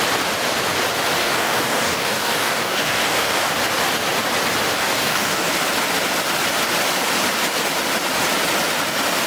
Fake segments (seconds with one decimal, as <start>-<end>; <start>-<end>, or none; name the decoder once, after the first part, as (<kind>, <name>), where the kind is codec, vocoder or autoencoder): 1.2-3.5 (codec, DAC); 4.8-5.5